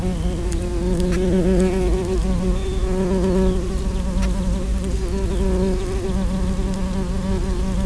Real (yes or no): yes